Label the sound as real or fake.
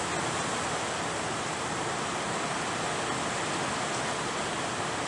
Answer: real